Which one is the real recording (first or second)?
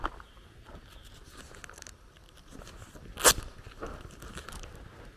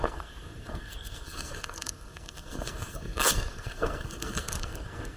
first